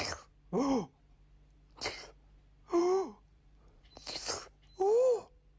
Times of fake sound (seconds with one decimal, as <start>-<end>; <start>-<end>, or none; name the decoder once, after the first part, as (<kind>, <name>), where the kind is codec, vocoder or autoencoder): 2.8-4.3 (vocoder, BigVGAN v2)